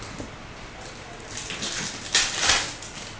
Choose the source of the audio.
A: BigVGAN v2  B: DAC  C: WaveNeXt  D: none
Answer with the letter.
D